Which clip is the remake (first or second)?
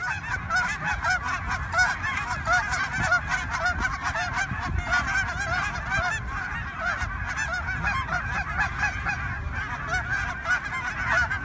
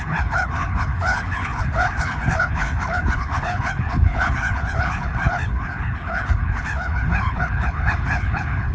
second